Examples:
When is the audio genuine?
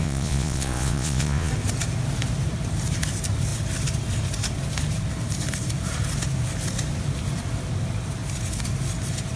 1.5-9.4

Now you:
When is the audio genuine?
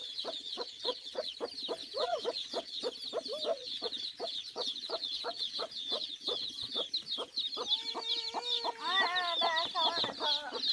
1.3-1.8; 2.8-3.5; 6.9-10.7